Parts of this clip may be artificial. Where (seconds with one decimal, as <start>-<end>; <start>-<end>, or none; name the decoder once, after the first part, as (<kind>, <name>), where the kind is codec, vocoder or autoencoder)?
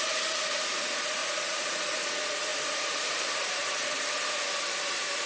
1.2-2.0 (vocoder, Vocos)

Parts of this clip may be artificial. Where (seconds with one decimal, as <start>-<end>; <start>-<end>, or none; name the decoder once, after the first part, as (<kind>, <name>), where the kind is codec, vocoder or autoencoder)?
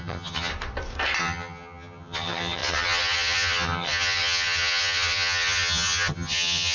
0.0-0.5 (vocoder, HiFi-GAN); 1.2-6.7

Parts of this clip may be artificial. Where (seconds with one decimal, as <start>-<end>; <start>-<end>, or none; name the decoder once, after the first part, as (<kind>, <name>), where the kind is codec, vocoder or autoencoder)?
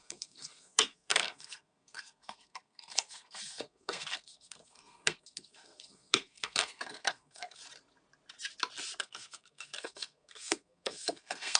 0.0-7.6 (codec, SNAC); 9.0-11.6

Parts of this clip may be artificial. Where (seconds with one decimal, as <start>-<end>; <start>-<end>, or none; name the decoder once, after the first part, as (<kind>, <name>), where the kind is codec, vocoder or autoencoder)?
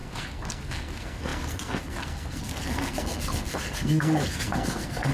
0.0-5.1 (codec, SNAC)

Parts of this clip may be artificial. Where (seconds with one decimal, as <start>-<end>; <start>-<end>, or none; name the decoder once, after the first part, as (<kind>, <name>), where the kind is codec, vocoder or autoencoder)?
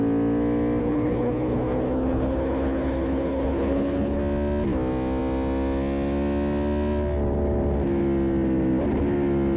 0.8-4.2 (codec, HILCodec)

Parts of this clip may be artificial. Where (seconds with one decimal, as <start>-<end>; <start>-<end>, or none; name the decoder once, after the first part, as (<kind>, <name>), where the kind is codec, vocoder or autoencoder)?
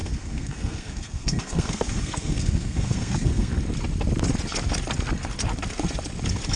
0.0-3.5 (codec, SNAC)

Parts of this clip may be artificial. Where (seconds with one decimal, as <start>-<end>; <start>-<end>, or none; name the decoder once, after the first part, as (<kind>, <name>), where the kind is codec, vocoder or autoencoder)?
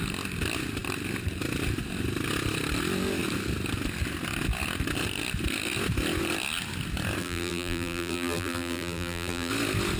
7.2-9.5 (vocoder, BigVGAN v2)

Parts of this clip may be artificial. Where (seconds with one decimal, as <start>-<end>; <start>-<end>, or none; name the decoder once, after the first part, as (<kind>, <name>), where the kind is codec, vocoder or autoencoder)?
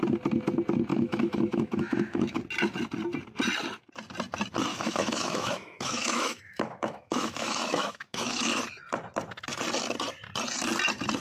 0.9-2.4 (autoencoder, DAC-VAE); 4.7-8.6